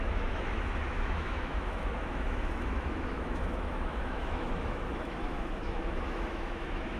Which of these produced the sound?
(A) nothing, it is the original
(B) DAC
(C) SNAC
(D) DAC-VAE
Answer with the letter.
D